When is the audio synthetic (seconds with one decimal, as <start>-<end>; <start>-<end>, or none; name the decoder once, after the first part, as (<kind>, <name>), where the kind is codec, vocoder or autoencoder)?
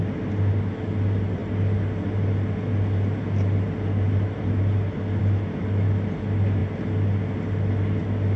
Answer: none